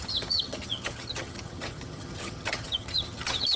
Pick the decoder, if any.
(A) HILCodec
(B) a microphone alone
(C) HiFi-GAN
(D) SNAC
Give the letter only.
C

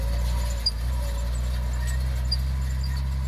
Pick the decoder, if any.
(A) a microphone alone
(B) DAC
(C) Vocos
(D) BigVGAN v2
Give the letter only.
A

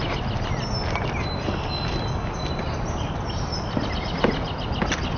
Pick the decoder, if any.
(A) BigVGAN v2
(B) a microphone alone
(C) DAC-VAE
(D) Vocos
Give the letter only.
B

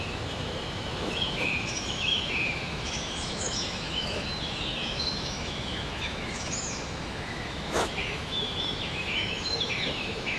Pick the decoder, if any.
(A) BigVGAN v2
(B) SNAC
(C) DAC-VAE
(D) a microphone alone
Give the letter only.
C